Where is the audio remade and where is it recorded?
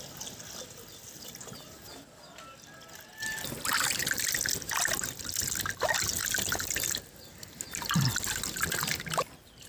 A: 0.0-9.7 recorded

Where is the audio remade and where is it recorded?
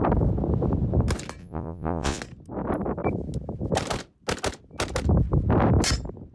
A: 0.0-1.4 recorded; 1.4-2.2 remade; 2.2-6.3 recorded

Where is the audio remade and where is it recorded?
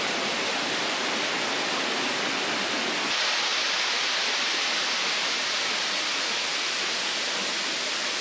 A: 0.0-8.2 recorded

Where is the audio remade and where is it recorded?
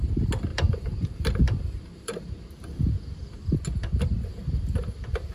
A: 0.0-0.5 recorded; 0.5-2.3 remade; 2.3-5.3 recorded